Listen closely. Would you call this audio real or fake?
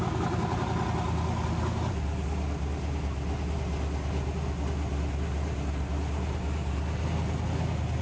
real